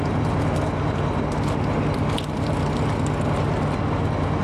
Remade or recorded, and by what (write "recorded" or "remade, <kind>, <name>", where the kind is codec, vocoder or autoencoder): recorded